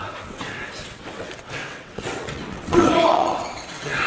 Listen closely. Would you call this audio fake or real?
fake